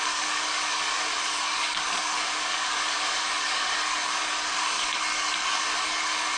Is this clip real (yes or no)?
no